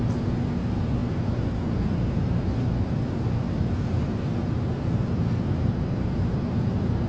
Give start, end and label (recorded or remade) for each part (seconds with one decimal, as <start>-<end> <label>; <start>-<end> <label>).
0.0-1.0 remade; 1.0-2.1 recorded; 2.1-7.1 remade